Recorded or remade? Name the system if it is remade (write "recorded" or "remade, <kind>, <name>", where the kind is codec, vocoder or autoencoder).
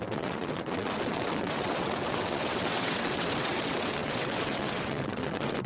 remade, vocoder, WaveNeXt